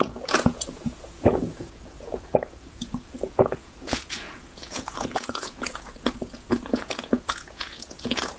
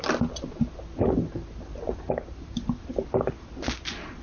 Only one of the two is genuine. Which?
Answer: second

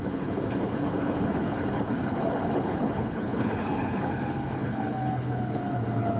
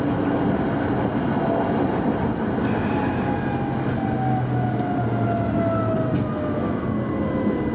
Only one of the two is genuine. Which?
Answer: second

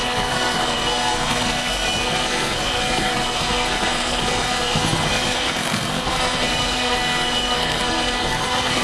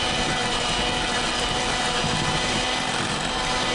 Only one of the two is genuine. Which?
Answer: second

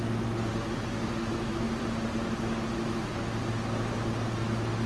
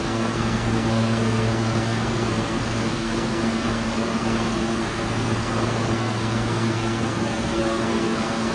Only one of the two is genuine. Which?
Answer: first